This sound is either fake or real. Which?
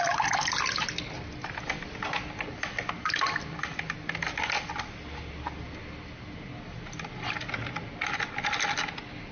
real